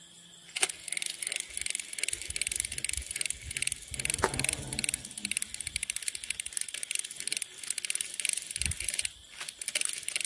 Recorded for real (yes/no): yes